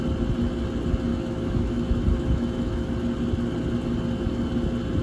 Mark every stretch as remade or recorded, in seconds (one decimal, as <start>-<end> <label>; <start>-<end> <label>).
0.0-1.1 recorded; 1.1-2.9 remade; 2.9-5.0 recorded